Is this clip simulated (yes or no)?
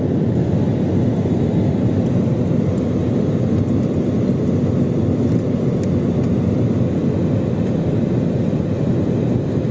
no